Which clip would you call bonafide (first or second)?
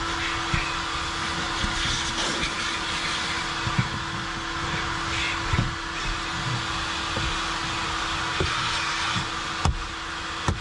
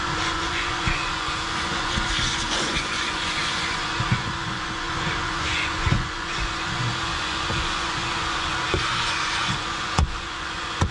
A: first